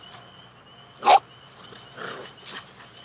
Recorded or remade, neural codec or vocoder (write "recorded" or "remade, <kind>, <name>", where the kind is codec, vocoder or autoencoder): recorded